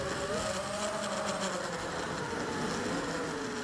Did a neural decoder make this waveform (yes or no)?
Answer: no